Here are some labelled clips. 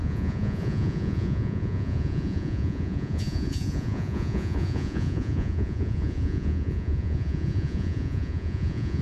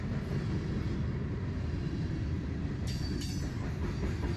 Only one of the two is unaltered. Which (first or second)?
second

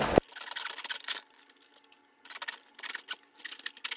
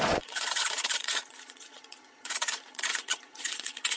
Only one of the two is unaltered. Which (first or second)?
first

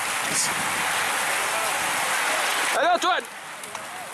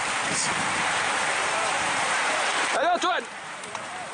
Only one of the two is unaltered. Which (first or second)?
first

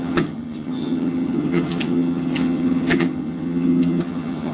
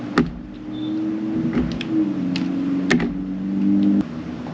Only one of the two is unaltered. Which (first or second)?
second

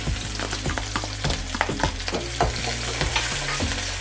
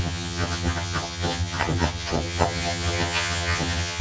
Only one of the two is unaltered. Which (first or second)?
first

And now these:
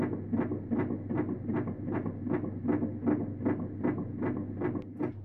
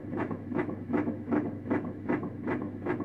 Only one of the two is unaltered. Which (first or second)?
first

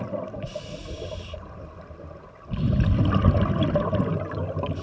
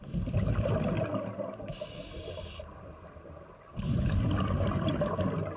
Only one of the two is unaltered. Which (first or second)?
second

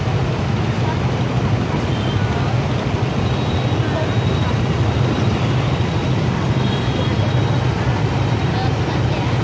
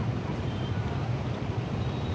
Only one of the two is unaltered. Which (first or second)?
first